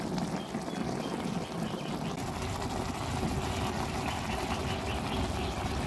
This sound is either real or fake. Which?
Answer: real